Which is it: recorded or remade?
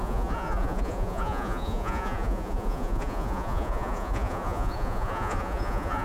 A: remade